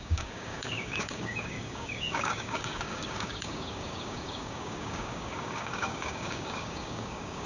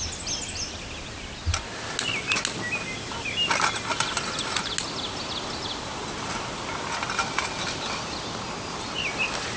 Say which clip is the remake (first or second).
first